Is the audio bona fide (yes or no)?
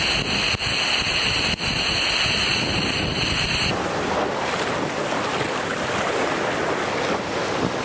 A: yes